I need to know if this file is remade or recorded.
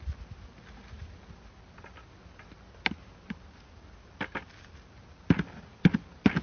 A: recorded